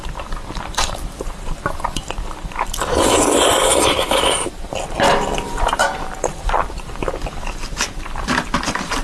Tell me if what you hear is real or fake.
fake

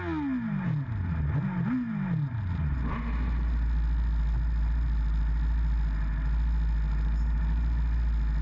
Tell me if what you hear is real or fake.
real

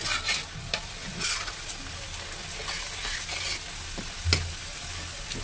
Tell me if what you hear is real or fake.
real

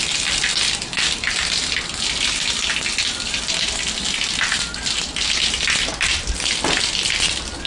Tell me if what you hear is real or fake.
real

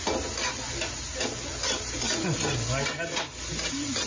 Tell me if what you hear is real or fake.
real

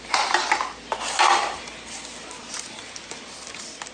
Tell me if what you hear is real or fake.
real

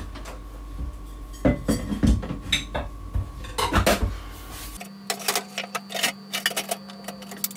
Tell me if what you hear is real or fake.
real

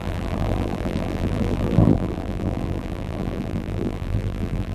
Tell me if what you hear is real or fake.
fake